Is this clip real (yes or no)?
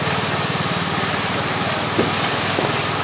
yes